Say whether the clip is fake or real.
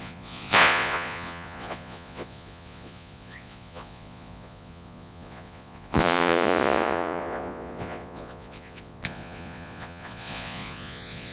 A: fake